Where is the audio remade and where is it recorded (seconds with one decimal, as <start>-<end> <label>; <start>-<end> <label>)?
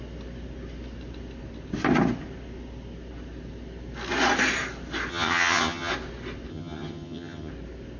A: 0.0-5.1 recorded; 5.1-5.9 remade; 5.9-6.5 recorded; 6.5-7.5 remade; 7.5-8.0 recorded